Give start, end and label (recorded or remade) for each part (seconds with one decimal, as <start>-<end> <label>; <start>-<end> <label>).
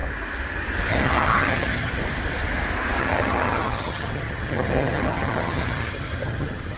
0.0-0.9 recorded; 0.9-2.0 remade; 2.0-3.0 recorded; 3.0-6.8 remade